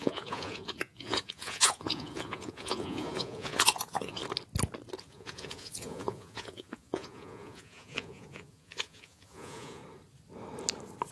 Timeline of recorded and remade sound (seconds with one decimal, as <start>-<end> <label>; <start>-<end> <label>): 0.0-4.2 remade; 4.2-5.0 recorded; 5.0-9.8 remade; 9.8-11.1 recorded